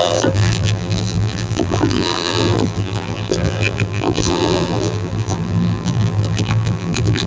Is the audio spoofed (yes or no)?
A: yes